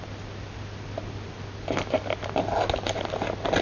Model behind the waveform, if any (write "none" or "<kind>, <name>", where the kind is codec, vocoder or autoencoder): none